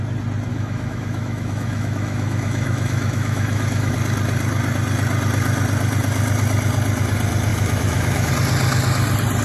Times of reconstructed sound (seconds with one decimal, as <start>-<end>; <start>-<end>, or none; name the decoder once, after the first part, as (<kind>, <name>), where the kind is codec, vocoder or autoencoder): 0.5-3.9 (autoencoder, DAC-VAE); 7.5-8.3